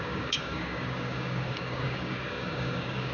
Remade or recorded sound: remade